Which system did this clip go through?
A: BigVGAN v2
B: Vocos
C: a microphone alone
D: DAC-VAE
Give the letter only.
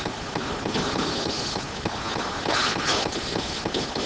C